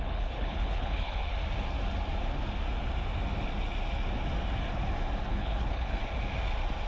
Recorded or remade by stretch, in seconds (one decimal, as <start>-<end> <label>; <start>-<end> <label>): 0.0-1.2 remade; 1.2-5.3 recorded; 5.3-6.0 remade; 6.0-6.9 recorded